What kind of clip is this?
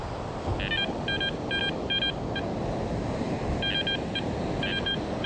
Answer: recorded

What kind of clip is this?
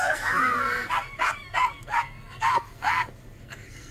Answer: remade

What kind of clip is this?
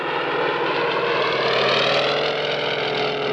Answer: recorded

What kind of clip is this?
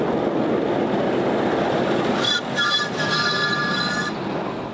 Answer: recorded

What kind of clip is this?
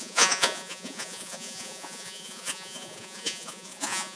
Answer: remade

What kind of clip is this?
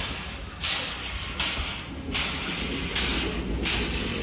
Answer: recorded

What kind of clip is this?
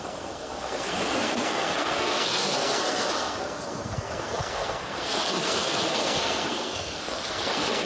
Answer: remade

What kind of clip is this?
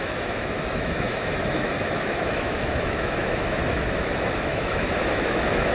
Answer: remade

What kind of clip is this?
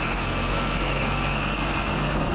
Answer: remade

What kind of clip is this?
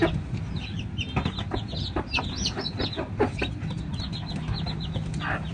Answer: recorded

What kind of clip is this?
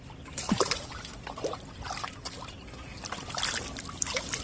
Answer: recorded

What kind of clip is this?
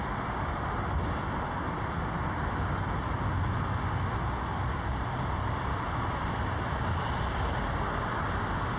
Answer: recorded